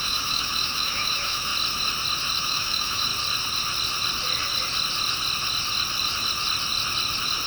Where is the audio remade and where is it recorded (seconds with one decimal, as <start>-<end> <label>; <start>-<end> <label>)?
0.0-1.5 remade; 1.5-2.4 recorded; 2.4-3.1 remade; 3.1-7.5 recorded